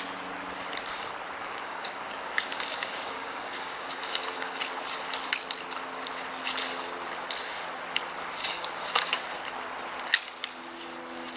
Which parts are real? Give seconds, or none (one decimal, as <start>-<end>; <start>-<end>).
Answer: 0.0-1.4; 4.6-8.4; 9.2-11.4